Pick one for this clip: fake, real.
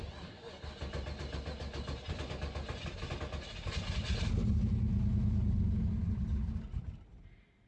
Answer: real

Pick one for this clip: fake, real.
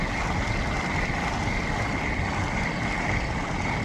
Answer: real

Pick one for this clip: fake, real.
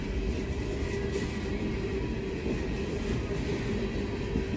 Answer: real